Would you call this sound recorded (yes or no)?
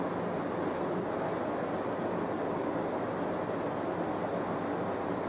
yes